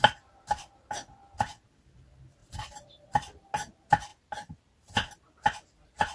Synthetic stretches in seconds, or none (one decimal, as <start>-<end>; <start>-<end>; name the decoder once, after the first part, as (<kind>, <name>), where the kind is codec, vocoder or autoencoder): 2.4-3.5 (vocoder, BigVGAN v2)